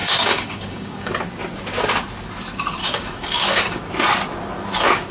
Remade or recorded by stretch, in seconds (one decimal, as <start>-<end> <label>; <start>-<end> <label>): 0.0-1.1 remade; 1.1-2.8 recorded; 2.8-3.8 remade; 3.8-5.1 recorded